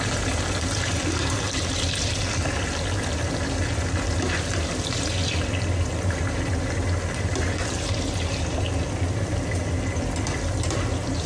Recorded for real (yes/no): yes